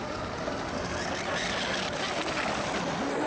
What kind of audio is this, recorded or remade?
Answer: recorded